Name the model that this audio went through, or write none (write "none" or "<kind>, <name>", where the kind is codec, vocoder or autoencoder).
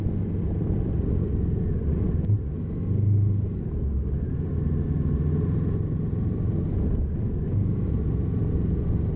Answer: none